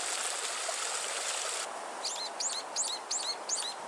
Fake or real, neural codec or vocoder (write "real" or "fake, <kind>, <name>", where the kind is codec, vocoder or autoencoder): real